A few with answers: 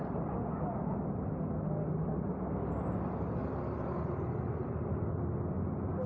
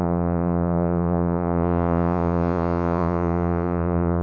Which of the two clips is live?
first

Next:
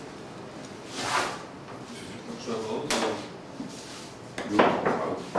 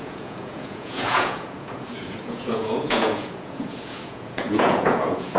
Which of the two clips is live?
first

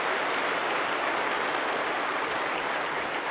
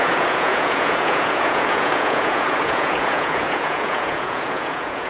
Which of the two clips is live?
first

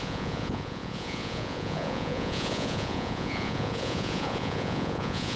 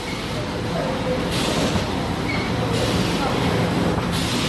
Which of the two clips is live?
second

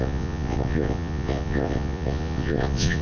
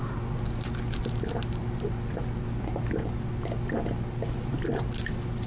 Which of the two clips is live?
second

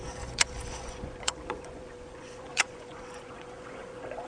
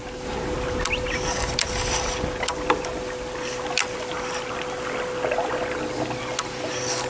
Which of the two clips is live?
second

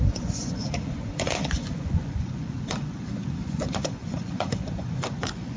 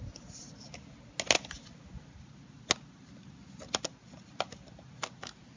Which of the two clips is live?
second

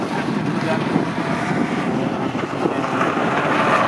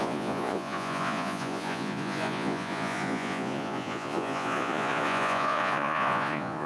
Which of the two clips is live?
first